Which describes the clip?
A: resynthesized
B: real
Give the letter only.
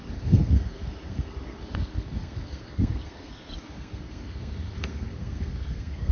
A